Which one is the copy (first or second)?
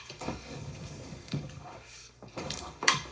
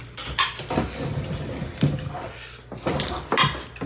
first